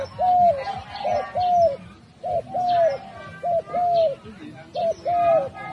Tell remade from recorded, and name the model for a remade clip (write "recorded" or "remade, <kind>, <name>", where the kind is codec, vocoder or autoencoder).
recorded